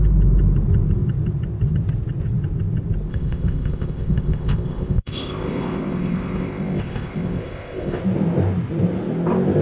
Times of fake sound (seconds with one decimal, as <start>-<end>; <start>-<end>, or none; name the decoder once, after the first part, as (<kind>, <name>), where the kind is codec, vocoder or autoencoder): 3.1-8.0 (codec, ZipCodec)